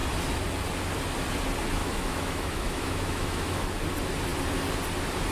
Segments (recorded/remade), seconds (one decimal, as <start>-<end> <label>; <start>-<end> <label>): 0.0-1.8 recorded; 1.8-3.8 remade; 3.8-5.3 recorded